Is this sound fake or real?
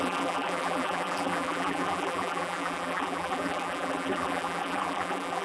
fake